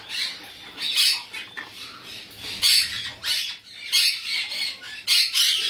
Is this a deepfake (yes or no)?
no